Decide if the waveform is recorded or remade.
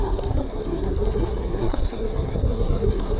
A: remade